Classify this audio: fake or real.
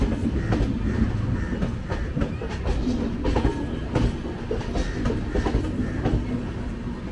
real